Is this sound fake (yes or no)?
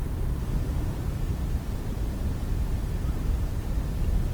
yes